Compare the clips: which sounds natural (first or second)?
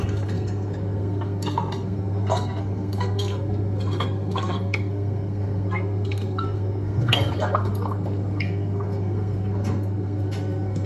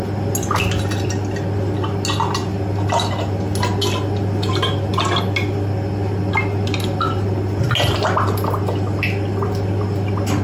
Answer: second